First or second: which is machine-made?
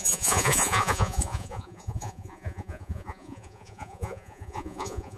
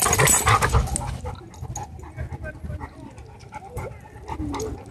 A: first